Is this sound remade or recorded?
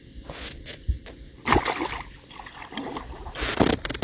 recorded